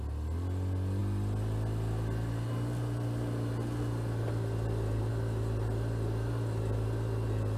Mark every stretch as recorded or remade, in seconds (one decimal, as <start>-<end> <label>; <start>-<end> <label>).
0.0-7.6 recorded